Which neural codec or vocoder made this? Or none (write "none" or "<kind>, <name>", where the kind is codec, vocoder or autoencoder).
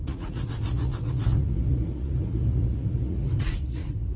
vocoder, Vocos